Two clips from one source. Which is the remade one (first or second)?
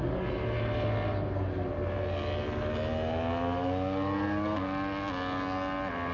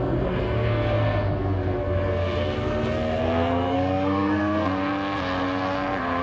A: second